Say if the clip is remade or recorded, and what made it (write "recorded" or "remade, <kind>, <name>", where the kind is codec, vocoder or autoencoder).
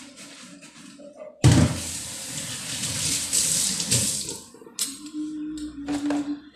recorded